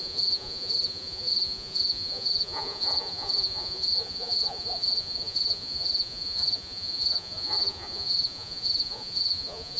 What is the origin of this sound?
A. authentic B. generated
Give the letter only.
B